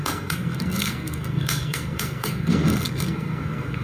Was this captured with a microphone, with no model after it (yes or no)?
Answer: no